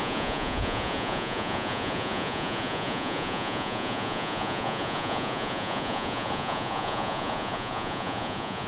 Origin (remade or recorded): remade